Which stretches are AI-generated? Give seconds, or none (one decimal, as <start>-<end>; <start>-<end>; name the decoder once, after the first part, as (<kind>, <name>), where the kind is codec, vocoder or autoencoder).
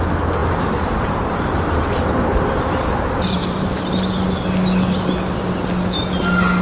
0.4-3.9 (vocoder, BigVGAN v2)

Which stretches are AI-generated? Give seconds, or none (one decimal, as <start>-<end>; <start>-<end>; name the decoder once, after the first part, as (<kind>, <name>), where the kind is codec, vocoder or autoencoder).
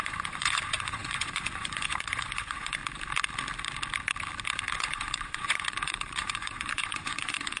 0.0-2.8 (vocoder, Vocos); 4.7-7.6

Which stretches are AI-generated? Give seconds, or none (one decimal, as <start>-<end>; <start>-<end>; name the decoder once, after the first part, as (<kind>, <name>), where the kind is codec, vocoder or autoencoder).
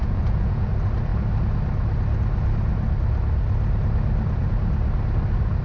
0.0-0.7 (vocoder, Vocos)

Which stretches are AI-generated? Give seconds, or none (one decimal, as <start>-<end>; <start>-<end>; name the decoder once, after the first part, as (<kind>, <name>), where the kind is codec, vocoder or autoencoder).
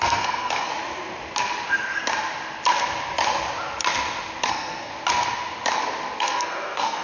0.0-0.7 (codec, SNAC); 4.5-4.9; 6.2-7.0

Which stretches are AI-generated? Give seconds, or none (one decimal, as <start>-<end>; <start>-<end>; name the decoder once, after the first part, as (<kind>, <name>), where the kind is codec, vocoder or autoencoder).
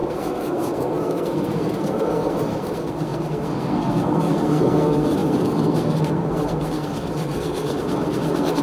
0.0-8.6 (codec, SNAC)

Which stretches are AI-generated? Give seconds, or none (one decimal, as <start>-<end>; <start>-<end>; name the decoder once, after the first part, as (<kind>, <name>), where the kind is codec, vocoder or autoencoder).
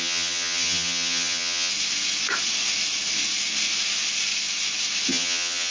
0.0-1.7 (vocoder, HiFi-GAN); 5.1-5.7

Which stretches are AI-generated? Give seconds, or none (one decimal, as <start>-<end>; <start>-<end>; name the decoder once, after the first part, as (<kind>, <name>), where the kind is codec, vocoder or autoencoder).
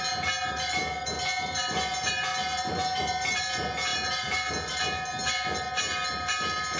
none